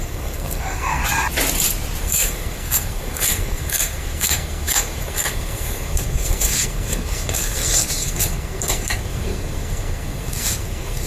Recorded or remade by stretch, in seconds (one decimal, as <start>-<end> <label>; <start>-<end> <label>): 0.0-1.0 remade; 1.0-2.0 recorded; 2.0-11.1 remade